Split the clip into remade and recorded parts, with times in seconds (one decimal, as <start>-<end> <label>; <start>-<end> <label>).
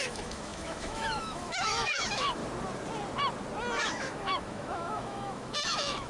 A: 0.0-2.4 remade; 2.4-3.8 recorded; 3.8-6.1 remade